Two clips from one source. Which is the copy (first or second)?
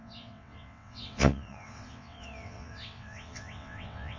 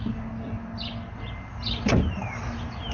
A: first